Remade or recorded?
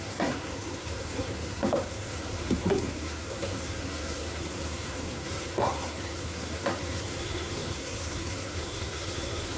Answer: remade